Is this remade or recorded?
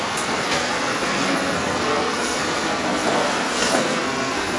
remade